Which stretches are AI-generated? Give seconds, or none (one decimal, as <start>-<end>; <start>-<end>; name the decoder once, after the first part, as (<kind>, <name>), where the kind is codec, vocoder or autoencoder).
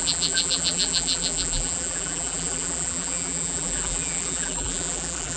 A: 0.0-5.4 (vocoder, BigVGAN v2)